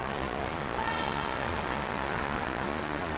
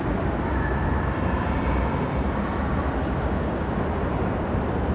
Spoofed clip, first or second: first